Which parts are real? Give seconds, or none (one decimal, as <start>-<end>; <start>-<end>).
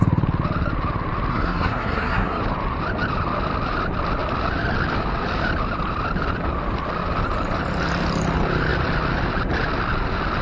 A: 0.0-1.3; 2.4-10.4